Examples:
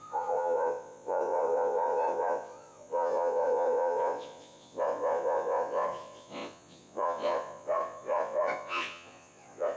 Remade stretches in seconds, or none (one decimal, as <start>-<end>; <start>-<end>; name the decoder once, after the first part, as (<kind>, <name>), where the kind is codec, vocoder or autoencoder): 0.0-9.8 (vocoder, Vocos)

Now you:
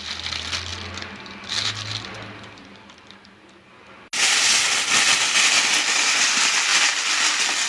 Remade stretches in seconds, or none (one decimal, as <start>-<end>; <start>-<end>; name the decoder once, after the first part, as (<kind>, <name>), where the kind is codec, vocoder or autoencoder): none

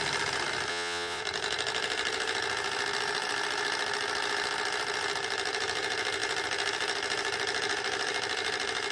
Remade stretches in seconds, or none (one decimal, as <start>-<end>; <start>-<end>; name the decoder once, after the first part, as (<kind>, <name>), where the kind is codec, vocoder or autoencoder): 0.7-1.2 (vocoder, Vocos)